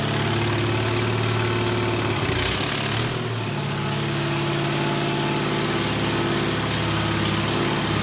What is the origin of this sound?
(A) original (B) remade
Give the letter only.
A